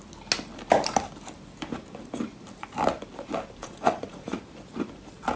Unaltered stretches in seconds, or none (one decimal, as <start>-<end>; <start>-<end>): 0.0-3.6; 4.4-5.4